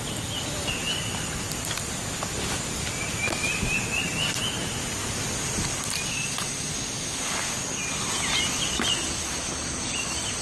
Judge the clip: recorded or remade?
recorded